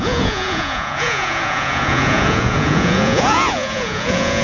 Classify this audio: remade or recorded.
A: remade